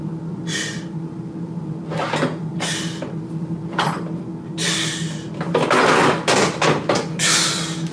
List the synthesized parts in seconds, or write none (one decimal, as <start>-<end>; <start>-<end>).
0.0-4.3